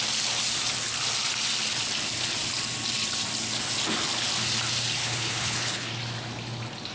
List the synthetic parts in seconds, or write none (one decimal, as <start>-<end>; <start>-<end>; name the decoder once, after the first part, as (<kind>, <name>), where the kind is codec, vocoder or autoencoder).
5.0-5.9 (codec, HILCodec)